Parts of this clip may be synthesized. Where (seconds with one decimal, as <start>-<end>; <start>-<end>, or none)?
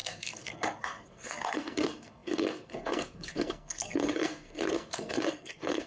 0.0-5.9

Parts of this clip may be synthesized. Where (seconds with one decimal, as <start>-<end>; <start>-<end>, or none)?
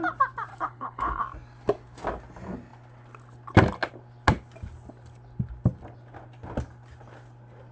0.5-1.2